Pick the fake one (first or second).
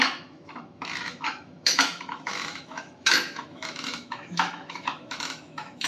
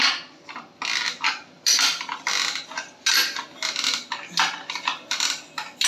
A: first